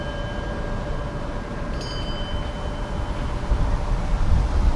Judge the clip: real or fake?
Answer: real